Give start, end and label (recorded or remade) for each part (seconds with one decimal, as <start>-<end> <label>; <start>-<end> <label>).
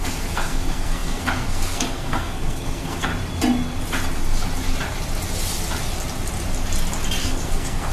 0.0-3.1 remade; 3.1-7.2 recorded; 7.2-7.9 remade